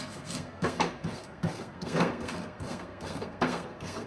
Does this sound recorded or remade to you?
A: remade